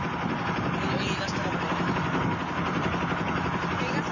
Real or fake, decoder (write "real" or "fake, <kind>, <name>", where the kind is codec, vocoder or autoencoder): real